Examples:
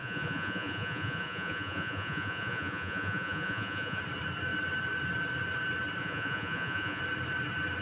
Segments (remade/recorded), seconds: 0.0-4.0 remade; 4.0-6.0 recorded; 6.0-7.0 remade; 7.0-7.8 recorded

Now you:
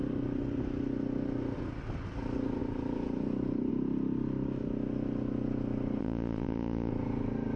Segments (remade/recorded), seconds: 0.0-6.0 recorded; 6.0-6.9 remade; 6.9-7.6 recorded

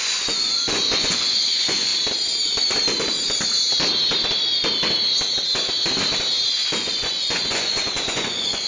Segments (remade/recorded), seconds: 0.0-1.9 remade; 1.9-6.8 recorded; 6.8-8.7 remade

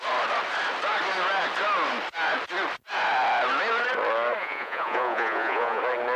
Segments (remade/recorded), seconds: 0.0-4.4 recorded; 4.4-5.8 remade; 5.8-6.2 recorded

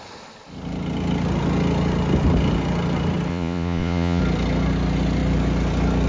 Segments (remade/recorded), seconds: 0.0-3.3 recorded; 3.3-4.2 remade; 4.2-6.1 recorded

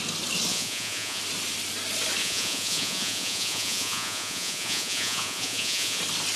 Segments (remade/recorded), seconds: 0.0-0.5 recorded; 0.5-1.2 remade; 1.2-2.2 recorded; 2.2-6.0 remade; 6.0-6.4 recorded

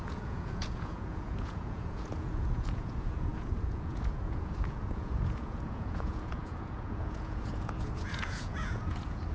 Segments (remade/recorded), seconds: 0.0-9.3 remade

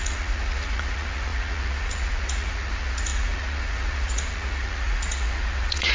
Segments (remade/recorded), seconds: 0.0-5.9 remade